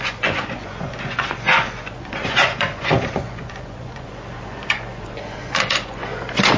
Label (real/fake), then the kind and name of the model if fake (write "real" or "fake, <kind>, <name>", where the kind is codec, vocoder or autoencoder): fake, vocoder, Vocos